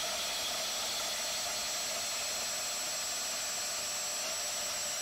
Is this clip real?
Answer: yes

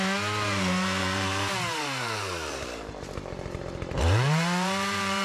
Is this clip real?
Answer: no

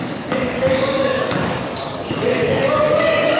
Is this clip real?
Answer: no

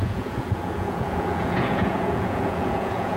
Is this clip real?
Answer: no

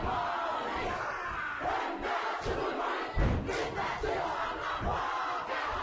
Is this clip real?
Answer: yes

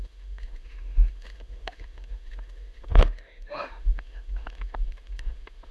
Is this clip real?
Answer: no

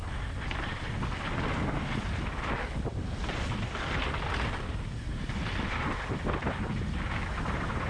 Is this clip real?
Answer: yes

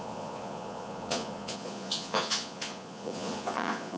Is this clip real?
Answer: no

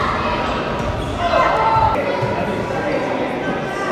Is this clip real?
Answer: yes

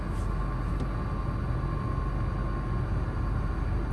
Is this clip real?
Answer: yes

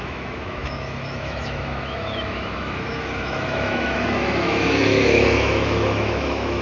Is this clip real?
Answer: no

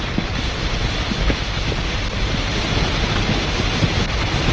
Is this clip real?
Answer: yes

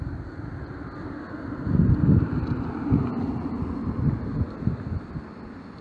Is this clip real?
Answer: yes